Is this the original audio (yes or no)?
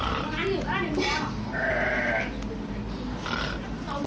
yes